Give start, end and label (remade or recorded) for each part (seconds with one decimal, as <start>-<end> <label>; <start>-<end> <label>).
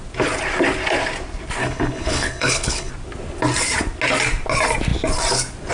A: 0.0-1.6 recorded; 1.6-2.9 remade; 2.9-5.7 recorded